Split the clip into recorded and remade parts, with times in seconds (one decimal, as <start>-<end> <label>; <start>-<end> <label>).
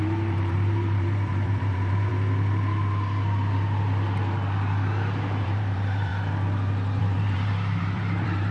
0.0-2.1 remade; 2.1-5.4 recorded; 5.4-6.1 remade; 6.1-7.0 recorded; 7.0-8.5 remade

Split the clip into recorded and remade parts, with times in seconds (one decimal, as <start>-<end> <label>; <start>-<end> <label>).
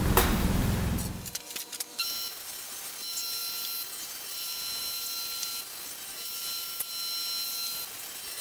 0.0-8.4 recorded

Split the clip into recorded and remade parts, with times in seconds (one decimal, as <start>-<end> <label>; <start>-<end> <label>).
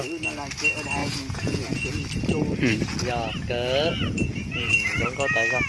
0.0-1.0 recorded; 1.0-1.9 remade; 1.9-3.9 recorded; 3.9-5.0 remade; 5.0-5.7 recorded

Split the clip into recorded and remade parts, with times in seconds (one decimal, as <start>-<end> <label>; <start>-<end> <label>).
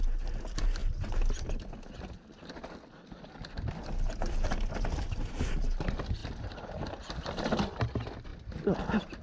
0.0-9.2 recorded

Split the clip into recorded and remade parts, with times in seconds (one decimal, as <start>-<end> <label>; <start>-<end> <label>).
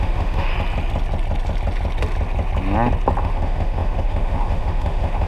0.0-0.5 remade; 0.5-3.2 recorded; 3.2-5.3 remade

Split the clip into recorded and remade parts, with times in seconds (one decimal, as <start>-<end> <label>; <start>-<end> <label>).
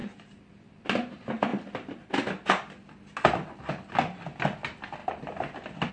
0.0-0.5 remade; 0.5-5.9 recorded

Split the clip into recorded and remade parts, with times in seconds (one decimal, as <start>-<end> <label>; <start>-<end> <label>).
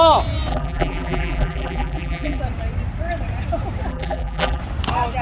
0.0-0.5 recorded; 0.5-2.4 remade; 2.4-3.9 recorded; 3.9-4.6 remade; 4.6-5.2 recorded